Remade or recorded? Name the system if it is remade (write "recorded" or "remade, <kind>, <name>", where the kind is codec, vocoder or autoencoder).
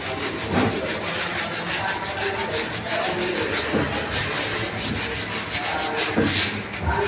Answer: recorded